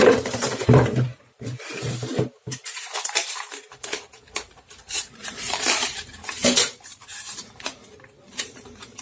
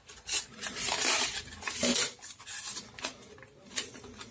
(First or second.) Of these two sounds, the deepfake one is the first